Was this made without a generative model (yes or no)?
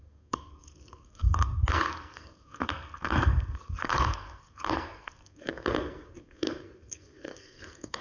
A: no